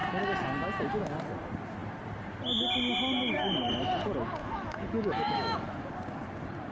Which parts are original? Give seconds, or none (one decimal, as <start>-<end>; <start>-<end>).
0.0-4.4; 5.9-6.7